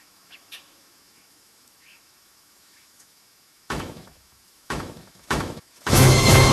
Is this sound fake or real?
fake